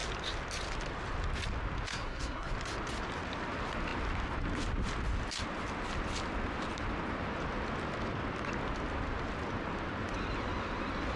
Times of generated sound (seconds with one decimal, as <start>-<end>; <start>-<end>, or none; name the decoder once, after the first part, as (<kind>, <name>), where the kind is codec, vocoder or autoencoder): 1.9-2.5 (codec, SNAC)